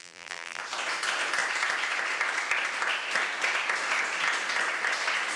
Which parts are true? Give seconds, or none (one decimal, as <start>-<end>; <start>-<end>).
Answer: 0.6-5.4